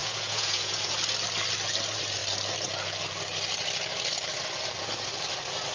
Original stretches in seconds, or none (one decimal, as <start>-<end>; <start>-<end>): 0.9-5.7